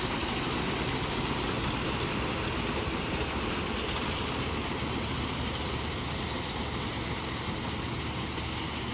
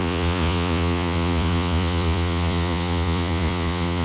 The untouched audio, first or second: first